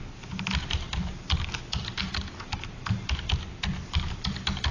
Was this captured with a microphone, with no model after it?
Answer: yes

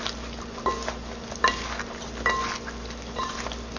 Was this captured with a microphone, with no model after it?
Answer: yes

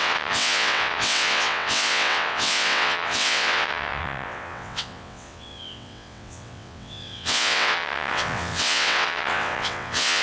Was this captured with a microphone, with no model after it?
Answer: no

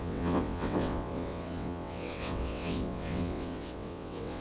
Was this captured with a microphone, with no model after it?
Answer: no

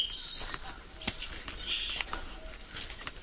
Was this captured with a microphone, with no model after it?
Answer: yes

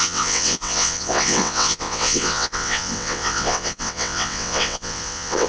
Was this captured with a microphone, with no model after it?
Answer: no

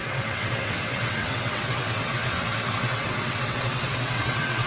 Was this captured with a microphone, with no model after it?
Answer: no